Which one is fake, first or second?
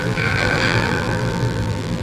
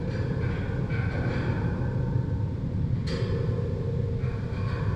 first